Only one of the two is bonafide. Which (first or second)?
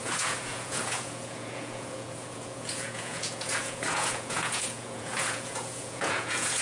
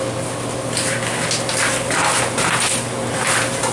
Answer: second